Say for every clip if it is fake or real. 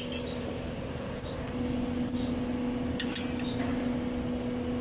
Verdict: real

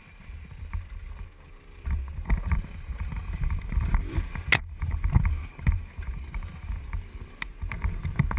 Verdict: real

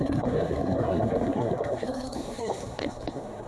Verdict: fake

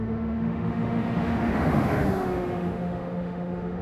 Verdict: fake